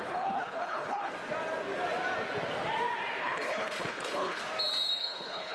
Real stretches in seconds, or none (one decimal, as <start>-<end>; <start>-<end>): 1.1-3.2; 4.4-5.0